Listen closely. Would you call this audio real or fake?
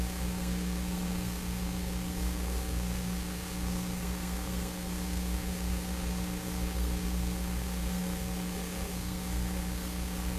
fake